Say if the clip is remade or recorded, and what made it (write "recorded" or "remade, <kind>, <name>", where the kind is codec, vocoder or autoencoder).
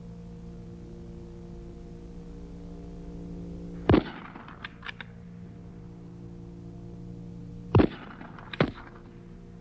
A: recorded